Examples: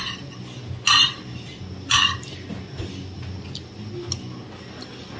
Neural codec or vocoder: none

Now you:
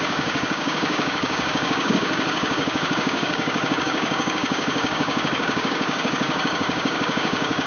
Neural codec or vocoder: codec, DAC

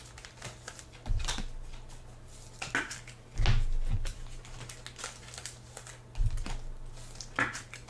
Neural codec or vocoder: none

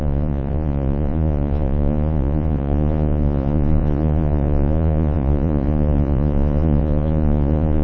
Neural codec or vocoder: vocoder, Vocos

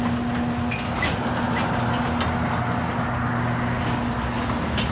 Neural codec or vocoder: none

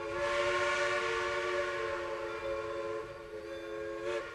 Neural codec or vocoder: none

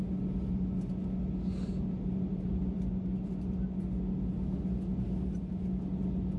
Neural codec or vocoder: none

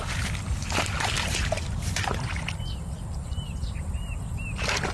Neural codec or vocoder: none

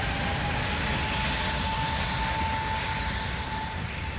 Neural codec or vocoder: none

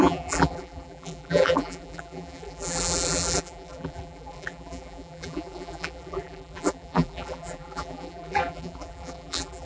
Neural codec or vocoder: vocoder, BigVGAN v2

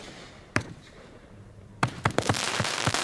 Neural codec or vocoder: vocoder, BigVGAN v2